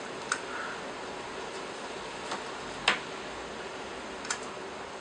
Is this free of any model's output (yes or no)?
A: yes